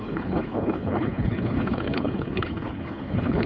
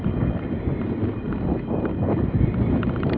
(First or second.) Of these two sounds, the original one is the second